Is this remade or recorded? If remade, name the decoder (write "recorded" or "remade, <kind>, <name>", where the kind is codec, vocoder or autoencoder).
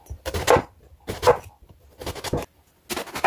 recorded